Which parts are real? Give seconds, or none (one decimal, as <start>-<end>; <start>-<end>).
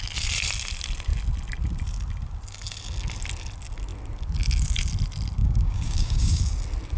0.0-5.4; 6.4-7.0